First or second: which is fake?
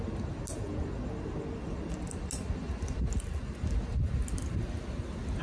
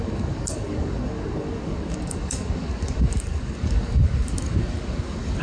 second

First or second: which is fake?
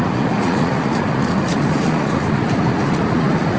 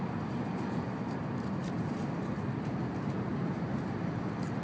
first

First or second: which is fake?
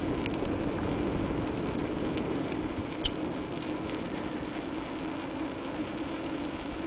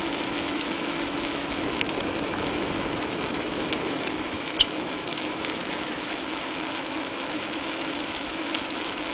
second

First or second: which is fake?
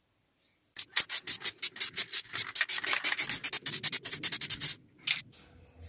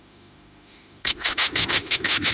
second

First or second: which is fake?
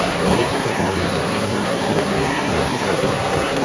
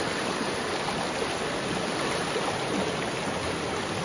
first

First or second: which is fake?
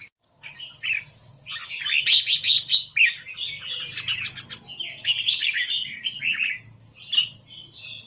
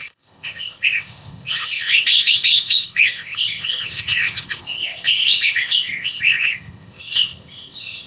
second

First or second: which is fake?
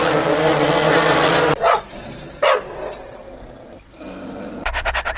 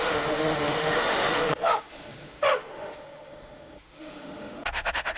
second